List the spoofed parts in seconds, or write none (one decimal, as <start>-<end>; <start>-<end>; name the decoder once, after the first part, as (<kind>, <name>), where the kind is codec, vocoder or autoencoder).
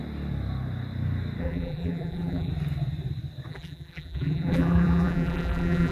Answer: 1.4-2.5 (vocoder, BigVGAN v2); 3.5-5.9